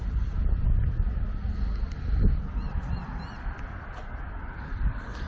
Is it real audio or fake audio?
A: real